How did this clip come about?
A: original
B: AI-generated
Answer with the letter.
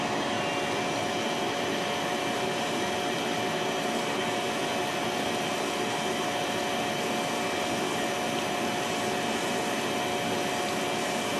A